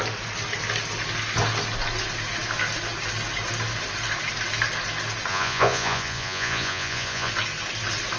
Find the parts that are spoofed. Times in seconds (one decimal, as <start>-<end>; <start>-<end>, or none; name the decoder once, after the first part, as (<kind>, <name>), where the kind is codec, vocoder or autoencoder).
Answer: 5.3-7.3 (vocoder, Vocos)